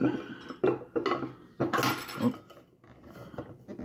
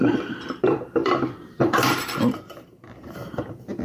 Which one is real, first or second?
first